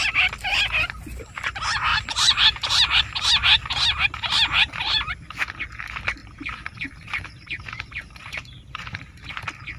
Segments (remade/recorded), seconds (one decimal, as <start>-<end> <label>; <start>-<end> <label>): 0.0-1.9 recorded; 1.9-3.0 remade; 3.0-6.2 recorded; 6.2-9.3 remade; 9.3-9.8 recorded